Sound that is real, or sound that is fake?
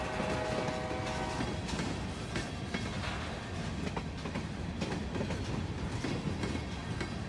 real